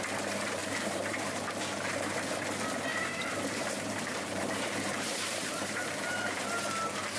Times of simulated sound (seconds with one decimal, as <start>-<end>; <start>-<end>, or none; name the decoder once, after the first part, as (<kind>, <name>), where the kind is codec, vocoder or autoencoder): 0.6-1.6 (vocoder, BigVGAN v2); 2.9-6.4